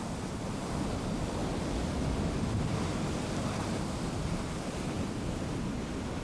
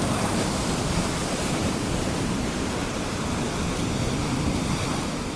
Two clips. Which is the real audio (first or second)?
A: first